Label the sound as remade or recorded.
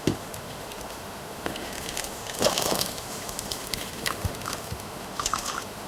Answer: remade